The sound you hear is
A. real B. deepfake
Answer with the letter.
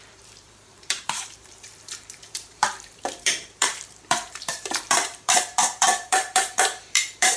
B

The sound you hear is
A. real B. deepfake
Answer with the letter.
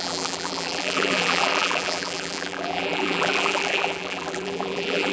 B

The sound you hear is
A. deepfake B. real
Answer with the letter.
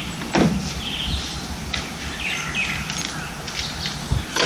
B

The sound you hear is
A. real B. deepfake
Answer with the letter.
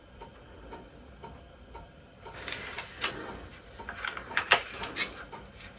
A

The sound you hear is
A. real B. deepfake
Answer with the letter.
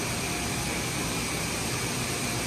B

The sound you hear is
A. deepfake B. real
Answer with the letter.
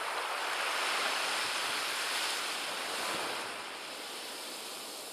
A